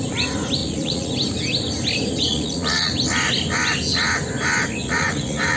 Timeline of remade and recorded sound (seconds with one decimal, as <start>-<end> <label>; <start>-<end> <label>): 0.0-0.6 recorded; 0.6-1.1 remade; 1.1-2.3 recorded; 2.3-2.9 remade; 2.9-4.8 recorded; 4.8-5.6 remade